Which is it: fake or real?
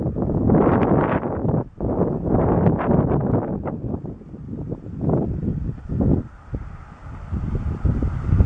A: real